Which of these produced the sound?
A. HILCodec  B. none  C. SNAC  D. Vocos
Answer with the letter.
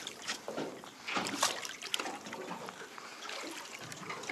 B